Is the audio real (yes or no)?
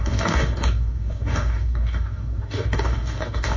no